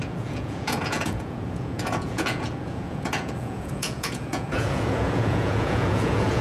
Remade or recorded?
remade